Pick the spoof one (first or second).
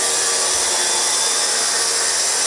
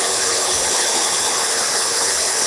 second